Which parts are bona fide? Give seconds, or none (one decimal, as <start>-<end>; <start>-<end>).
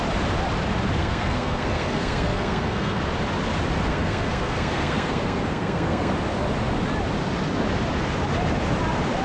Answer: 0.0-1.0; 3.0-3.9; 6.1-9.2